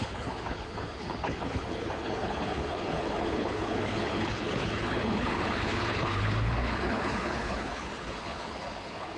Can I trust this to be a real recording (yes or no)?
no